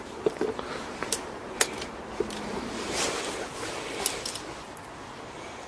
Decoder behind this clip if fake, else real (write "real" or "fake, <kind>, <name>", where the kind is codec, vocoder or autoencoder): real